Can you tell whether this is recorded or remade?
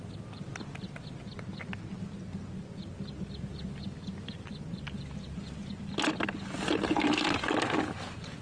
recorded